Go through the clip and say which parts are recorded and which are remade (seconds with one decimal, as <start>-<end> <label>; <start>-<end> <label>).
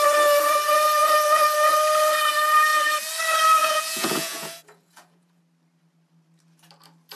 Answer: 0.0-3.6 recorded; 3.6-5.4 remade; 5.4-7.2 recorded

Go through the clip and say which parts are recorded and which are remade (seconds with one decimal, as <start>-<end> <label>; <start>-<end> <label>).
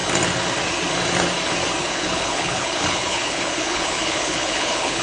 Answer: 0.0-1.8 recorded; 1.8-5.0 remade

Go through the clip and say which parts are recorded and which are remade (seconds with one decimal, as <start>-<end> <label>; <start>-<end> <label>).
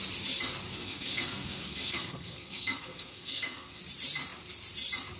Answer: 0.0-0.7 recorded; 0.7-3.8 remade; 3.8-5.2 recorded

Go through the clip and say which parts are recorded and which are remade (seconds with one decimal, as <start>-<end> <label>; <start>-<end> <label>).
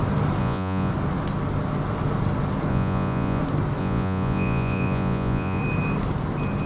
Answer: 0.0-0.4 recorded; 0.4-0.9 remade; 0.9-2.7 recorded; 2.7-3.4 remade; 3.4-3.8 recorded; 3.8-5.6 remade; 5.6-6.7 recorded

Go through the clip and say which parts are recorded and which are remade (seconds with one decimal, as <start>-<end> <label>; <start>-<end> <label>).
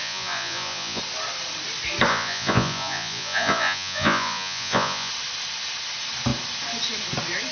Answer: 0.0-1.0 remade; 1.0-2.1 recorded; 2.1-5.1 remade; 5.1-7.5 recorded